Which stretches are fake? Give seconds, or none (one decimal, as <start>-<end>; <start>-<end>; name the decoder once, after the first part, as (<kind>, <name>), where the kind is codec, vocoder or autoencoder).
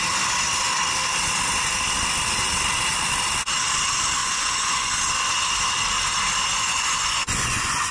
4.2-4.9 (vocoder, Vocos); 6.5-7.9